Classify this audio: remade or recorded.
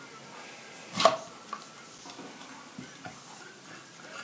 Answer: recorded